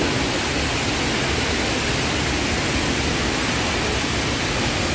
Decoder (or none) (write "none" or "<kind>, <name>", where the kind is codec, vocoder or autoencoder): none